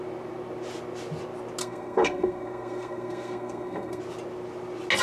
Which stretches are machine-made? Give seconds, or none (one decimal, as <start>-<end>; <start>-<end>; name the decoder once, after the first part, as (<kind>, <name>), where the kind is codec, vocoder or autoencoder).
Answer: 1.6-4.0 (codec, SNAC)